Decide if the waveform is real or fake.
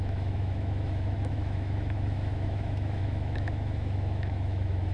fake